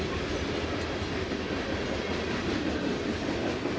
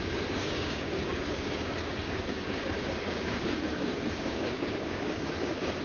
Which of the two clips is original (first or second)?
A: first